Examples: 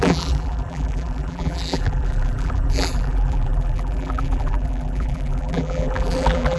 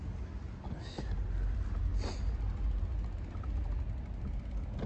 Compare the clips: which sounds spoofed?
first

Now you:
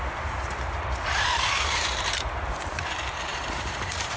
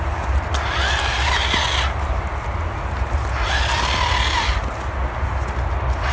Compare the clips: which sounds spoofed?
first